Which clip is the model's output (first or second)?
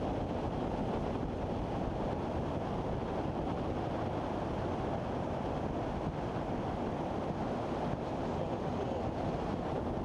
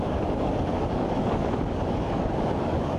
second